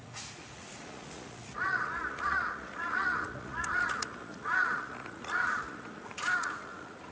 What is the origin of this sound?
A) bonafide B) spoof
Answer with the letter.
B